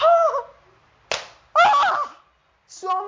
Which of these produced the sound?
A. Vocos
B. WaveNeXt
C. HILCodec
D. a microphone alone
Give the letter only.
D